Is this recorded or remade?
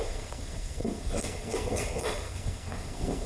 remade